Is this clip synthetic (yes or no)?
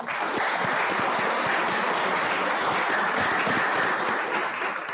no